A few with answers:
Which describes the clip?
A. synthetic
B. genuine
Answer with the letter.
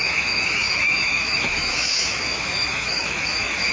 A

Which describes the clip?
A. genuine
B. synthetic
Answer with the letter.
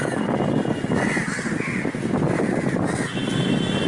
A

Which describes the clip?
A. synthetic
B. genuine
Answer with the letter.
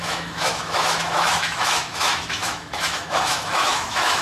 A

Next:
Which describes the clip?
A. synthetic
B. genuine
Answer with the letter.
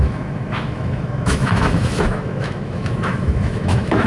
A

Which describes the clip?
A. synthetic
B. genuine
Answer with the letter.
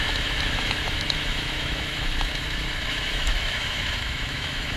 A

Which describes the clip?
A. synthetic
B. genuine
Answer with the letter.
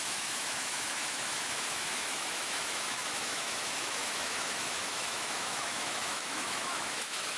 A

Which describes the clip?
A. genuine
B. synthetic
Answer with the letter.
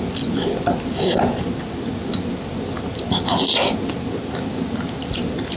A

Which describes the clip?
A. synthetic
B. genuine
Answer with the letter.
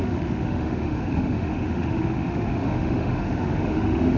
A